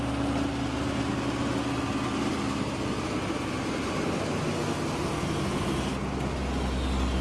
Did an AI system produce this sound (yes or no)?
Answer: no